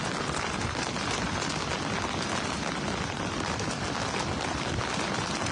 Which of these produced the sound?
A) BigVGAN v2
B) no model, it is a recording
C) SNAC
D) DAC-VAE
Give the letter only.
B